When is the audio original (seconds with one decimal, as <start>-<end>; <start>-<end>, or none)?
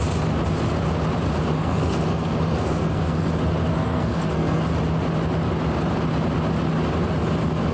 0.0-1.5; 3.3-3.7; 4.6-7.7